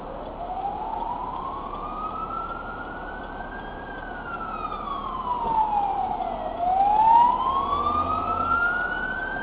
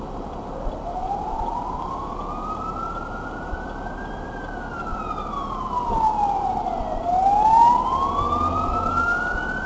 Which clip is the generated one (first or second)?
second